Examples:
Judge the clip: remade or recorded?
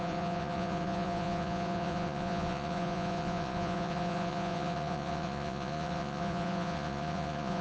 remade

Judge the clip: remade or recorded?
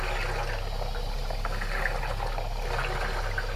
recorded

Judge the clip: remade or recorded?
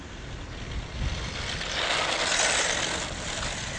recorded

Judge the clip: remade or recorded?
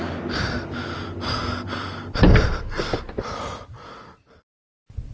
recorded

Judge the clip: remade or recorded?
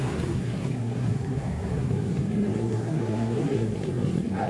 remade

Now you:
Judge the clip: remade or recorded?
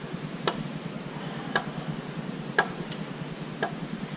recorded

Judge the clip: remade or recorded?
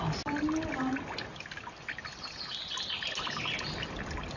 recorded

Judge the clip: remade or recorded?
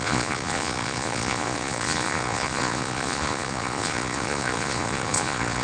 remade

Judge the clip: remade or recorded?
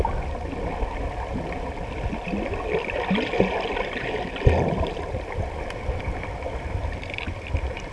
recorded